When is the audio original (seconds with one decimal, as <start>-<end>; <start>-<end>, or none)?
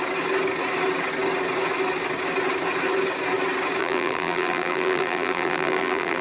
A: 0.0-3.8